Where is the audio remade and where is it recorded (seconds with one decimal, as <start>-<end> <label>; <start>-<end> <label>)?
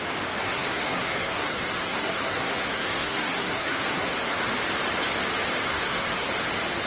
0.0-0.4 recorded; 0.4-4.5 remade; 4.5-5.7 recorded; 5.7-6.3 remade; 6.3-6.9 recorded